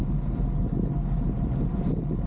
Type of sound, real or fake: real